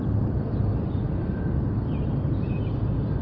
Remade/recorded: recorded